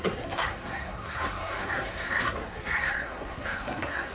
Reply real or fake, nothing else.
fake